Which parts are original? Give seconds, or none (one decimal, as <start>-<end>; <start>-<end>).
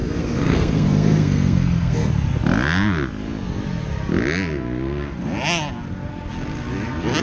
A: 2.1-7.2